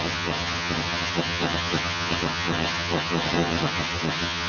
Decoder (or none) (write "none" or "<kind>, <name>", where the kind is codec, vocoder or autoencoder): vocoder, HiFi-GAN